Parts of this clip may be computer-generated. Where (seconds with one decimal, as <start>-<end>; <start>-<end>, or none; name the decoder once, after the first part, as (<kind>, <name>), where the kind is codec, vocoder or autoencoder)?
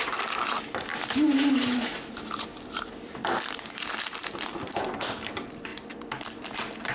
none